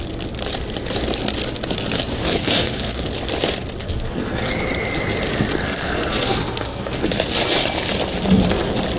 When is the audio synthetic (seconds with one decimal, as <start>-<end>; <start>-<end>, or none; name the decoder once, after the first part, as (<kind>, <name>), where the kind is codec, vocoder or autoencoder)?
2.2-3.1 (codec, SNAC); 3.8-4.5; 5.5-7.1